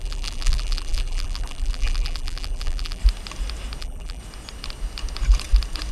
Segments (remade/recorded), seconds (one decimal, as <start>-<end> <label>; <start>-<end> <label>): 0.0-3.0 remade; 3.0-3.8 recorded; 3.8-4.2 remade; 4.2-5.9 recorded